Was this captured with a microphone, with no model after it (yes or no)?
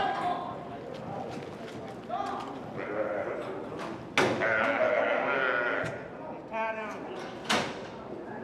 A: yes